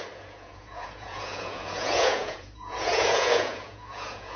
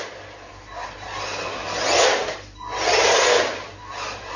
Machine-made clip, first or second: first